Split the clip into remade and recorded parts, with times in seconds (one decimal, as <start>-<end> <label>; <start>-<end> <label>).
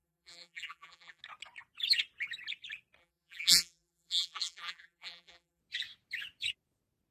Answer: 0.0-1.2 remade; 1.2-3.0 recorded; 3.0-5.6 remade; 5.6-7.1 recorded